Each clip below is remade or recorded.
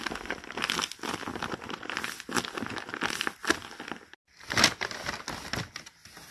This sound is recorded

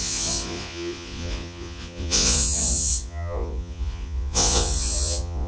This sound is remade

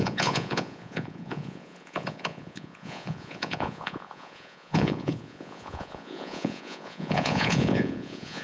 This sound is remade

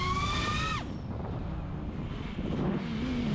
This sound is recorded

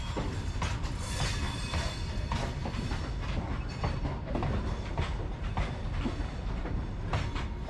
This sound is recorded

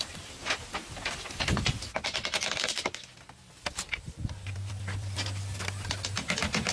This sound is recorded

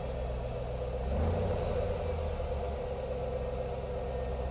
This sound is recorded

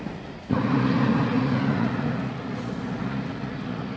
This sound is remade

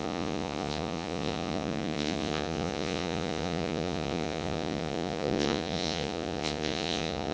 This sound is remade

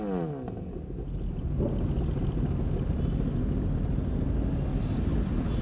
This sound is recorded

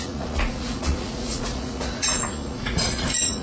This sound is remade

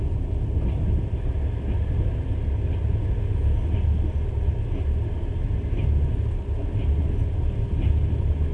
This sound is recorded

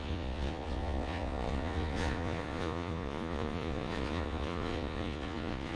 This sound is remade